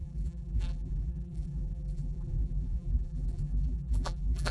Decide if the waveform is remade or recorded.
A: remade